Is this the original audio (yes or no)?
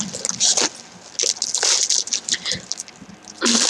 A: yes